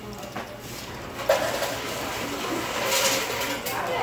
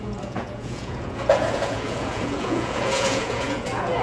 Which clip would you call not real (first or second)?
second